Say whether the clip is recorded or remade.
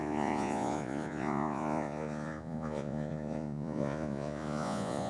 remade